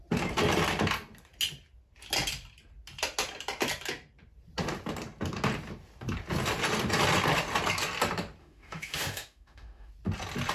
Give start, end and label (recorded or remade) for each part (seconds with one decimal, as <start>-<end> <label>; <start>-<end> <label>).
0.0-8.4 recorded; 8.4-9.9 remade; 9.9-10.5 recorded